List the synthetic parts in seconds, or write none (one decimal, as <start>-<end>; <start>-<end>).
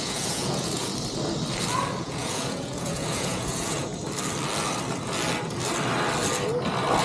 0.0-0.9; 2.0-3.9